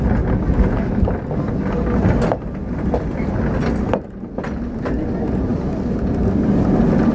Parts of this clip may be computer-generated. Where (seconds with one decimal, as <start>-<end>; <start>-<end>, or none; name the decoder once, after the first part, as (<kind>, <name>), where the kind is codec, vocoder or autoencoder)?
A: none